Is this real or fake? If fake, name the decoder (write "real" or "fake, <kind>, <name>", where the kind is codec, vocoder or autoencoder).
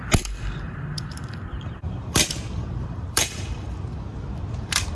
fake, vocoder, BigVGAN v2